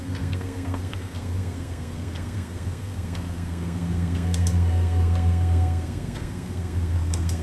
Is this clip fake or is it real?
fake